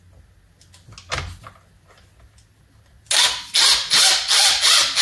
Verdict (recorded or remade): recorded